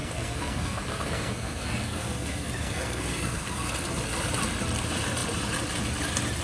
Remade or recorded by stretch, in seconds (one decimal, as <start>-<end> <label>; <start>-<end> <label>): 0.0-3.7 remade; 3.7-6.4 recorded